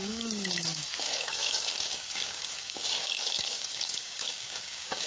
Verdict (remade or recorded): remade